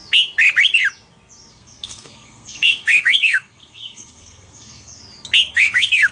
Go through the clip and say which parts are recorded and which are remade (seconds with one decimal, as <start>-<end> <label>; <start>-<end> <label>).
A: 0.0-1.5 recorded; 1.5-5.0 remade; 5.0-5.5 recorded; 5.5-6.1 remade